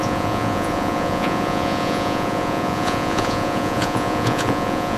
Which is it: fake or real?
fake